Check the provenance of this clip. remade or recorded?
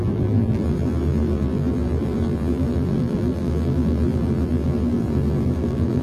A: remade